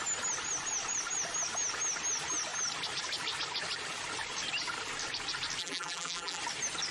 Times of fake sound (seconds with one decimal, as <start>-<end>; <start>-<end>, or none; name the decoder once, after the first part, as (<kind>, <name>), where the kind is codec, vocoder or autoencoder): 5.6-6.4 (vocoder, BigVGAN v2)